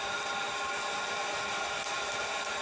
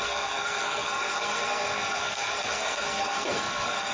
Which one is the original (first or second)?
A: first